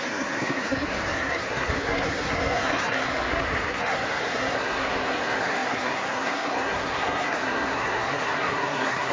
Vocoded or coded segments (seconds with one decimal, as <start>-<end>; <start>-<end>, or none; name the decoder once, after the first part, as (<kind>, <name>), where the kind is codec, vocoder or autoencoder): 0.0-9.1 (codec, SNAC)